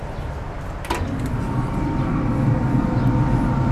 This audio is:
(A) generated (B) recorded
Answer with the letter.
B